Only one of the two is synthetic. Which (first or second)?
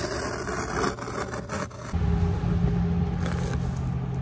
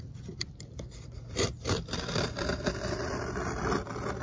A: second